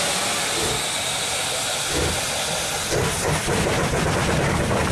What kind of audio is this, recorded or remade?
recorded